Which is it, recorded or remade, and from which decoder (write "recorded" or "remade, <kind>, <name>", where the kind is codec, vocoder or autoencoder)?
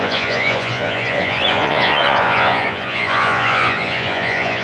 remade, vocoder, Vocos